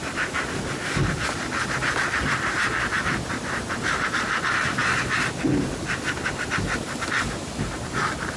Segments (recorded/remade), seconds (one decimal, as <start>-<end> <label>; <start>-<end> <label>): 0.0-8.4 recorded